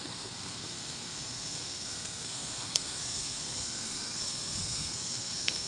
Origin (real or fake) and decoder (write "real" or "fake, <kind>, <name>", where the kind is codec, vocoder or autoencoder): fake, codec, SNAC